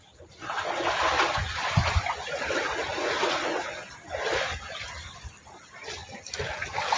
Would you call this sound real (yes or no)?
yes